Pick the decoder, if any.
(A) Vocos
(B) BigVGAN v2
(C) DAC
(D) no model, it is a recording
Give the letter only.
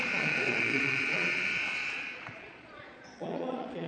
A